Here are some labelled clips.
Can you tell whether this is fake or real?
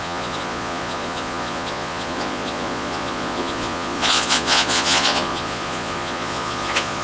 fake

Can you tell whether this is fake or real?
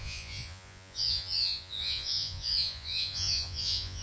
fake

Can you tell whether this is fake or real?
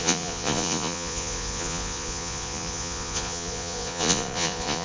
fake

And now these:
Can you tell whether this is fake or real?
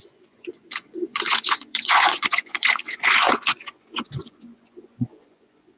fake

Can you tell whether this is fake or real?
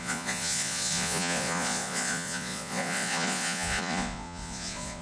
fake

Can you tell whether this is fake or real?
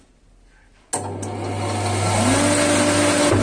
real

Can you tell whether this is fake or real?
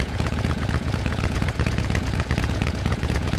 fake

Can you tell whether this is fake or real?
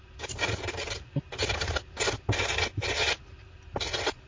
real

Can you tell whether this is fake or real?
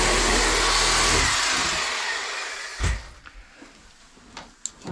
real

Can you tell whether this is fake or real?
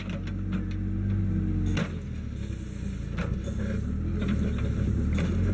real